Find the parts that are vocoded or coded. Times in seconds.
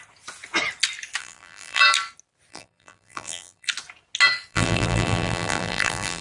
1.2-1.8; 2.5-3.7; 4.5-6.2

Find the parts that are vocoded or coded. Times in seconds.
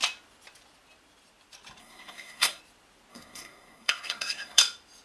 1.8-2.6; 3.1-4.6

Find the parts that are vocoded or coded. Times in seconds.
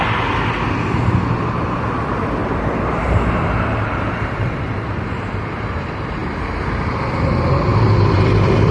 2.4-5.8; 7.7-8.7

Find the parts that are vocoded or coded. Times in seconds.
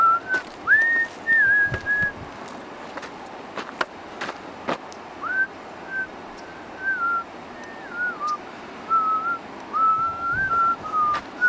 9.9-10.5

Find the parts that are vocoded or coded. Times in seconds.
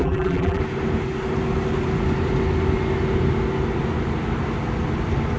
0.0-0.6